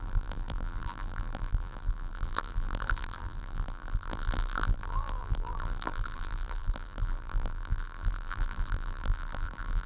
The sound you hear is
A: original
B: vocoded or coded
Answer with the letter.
B